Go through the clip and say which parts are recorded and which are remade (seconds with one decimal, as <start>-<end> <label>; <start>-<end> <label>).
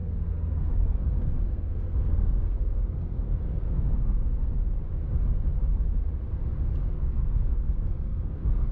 0.0-4.5 remade; 4.5-6.8 recorded; 6.8-8.7 remade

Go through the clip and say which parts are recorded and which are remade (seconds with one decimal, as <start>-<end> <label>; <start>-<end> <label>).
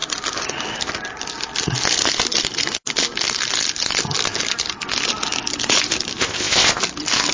0.0-6.2 recorded; 6.2-6.8 remade; 6.8-7.3 recorded